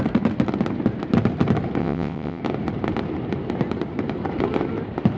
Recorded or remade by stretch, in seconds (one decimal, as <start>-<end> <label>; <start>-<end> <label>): 0.0-1.8 recorded; 1.8-2.4 remade; 2.4-5.2 recorded